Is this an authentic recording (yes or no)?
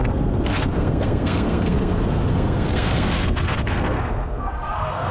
no